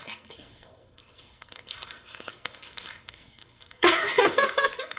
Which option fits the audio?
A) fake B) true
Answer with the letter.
A